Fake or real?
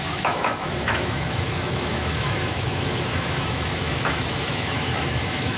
fake